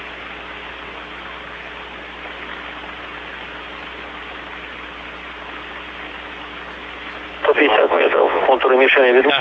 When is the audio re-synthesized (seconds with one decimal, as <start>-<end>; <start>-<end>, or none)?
7.8-8.4